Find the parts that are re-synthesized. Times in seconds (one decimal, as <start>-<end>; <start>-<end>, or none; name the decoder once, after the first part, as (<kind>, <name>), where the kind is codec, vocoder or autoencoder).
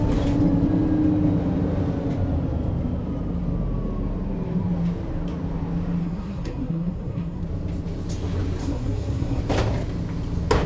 6.0-7.4 (codec, SNAC); 8.6-9.4